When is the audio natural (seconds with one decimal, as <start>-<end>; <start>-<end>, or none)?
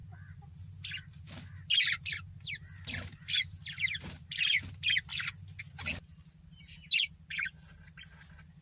0.0-8.6